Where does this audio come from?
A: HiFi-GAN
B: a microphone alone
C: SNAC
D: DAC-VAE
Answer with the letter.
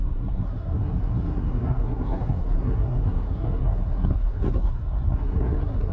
C